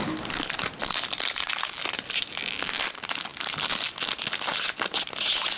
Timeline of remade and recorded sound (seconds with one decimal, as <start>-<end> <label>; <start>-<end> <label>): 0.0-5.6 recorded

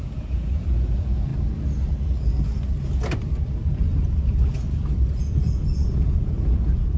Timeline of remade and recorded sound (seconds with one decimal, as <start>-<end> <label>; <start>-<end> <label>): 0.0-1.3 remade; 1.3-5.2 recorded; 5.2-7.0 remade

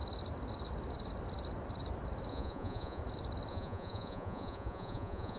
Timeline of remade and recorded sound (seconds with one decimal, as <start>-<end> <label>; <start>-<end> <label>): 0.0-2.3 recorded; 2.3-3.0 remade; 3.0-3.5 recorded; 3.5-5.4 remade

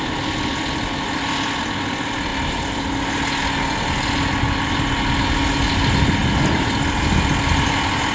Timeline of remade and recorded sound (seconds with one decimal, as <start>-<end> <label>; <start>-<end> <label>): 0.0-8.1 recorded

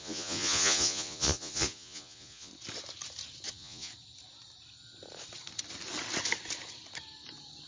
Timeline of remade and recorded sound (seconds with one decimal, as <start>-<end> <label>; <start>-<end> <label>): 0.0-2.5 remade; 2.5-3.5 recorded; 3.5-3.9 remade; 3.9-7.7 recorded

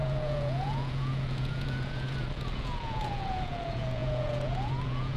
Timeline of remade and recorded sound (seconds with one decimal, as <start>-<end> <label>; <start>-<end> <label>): 0.0-5.2 remade

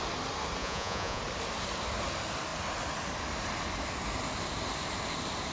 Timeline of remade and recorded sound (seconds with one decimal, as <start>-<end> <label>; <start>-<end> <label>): 0.0-0.6 recorded; 0.6-1.2 remade; 1.2-5.5 recorded

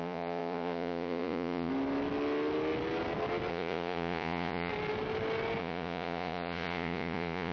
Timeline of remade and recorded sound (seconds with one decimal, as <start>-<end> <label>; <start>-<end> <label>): 0.0-1.7 remade; 1.7-3.5 recorded; 3.5-4.7 remade; 4.7-5.6 recorded; 5.6-7.5 remade